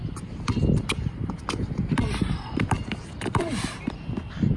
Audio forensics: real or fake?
real